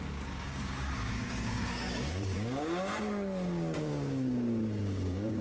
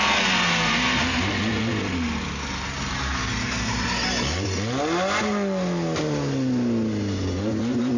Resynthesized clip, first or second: first